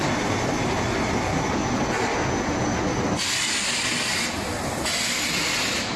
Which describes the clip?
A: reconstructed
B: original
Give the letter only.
B